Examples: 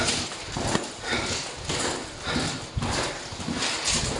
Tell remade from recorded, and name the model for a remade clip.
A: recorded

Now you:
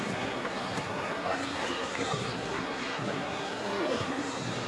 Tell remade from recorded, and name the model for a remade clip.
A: remade, codec, SNAC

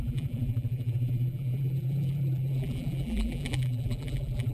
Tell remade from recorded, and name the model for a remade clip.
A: remade, vocoder, BigVGAN v2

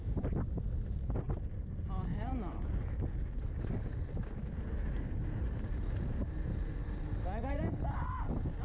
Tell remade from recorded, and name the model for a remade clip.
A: recorded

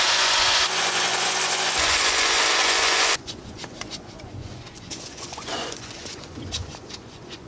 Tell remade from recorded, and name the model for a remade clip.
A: remade, vocoder, Vocos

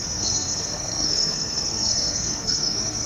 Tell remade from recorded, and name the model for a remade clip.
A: remade, codec, SNAC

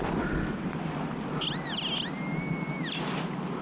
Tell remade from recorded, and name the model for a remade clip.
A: recorded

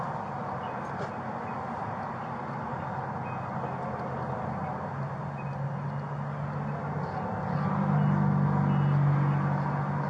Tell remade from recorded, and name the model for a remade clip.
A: recorded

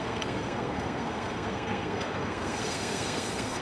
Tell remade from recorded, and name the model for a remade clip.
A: remade, codec, SNAC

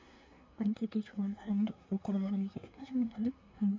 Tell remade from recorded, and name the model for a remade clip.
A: remade, codec, SNAC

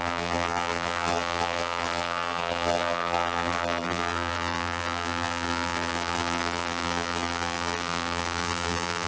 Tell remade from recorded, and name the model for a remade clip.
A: remade, vocoder, BigVGAN v2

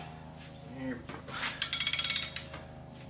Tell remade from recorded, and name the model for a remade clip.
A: recorded